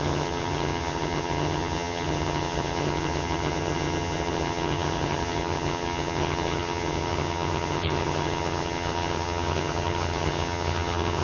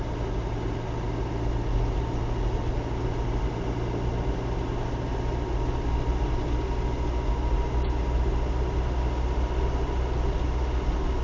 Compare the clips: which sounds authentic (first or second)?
second